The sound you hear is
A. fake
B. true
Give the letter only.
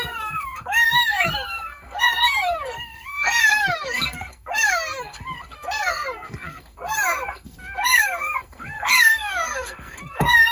A